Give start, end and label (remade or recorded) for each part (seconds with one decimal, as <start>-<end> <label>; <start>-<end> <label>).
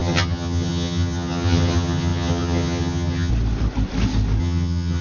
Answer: 0.0-3.3 remade; 3.3-4.4 recorded; 4.4-5.0 remade